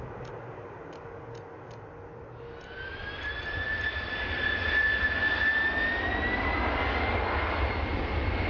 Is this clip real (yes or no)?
yes